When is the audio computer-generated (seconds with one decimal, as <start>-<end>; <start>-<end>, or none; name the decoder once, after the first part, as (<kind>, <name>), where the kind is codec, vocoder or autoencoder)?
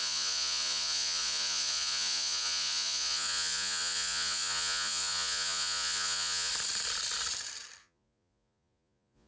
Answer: 0.0-6.5 (vocoder, Vocos); 7.8-9.3